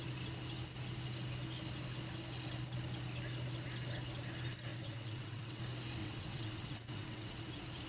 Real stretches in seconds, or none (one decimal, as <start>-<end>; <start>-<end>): 0.0-4.7; 5.6-6.0; 7.4-7.9